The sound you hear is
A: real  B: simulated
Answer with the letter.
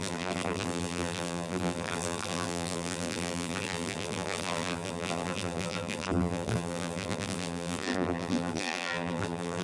B